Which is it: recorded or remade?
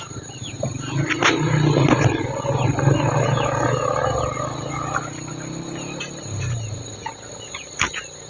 recorded